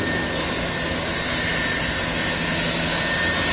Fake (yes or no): no